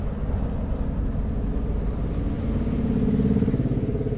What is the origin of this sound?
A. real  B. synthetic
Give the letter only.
A